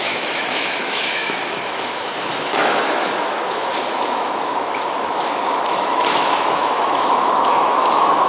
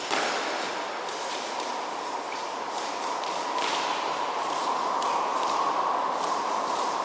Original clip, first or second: second